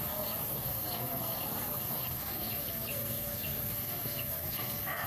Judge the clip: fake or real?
fake